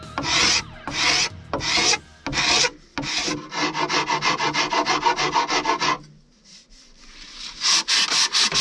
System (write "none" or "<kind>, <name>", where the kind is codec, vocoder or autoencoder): none